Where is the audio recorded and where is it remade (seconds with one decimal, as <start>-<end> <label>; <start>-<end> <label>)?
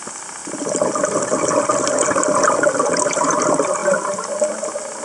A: 0.0-5.0 recorded